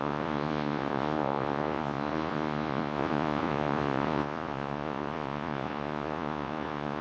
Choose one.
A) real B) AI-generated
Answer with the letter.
B